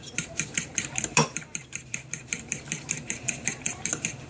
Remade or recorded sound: remade